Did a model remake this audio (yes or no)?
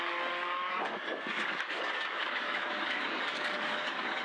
yes